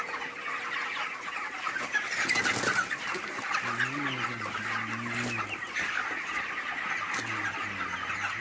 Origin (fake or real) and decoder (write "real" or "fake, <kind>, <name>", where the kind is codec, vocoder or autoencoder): real